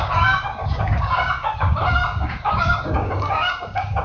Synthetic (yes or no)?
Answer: yes